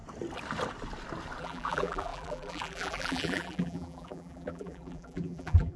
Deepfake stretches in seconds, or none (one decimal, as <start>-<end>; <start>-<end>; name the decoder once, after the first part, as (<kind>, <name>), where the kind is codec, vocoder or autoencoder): 1.4-5.8 (vocoder, BigVGAN v2)